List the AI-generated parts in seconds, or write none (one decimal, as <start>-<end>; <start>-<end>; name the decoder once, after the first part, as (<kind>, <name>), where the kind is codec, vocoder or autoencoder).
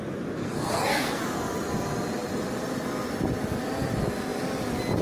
0.4-1.2 (codec, SNAC)